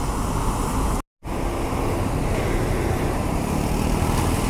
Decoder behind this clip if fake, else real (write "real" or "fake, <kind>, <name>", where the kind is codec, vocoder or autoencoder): real